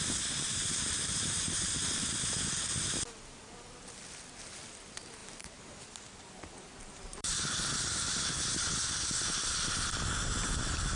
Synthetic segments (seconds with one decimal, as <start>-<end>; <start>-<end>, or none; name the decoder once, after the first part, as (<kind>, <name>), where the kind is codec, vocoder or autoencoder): 0.5-2.0 (vocoder, BigVGAN v2); 5.2-5.8; 6.8-7.6